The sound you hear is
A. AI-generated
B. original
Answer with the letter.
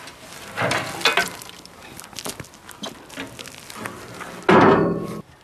B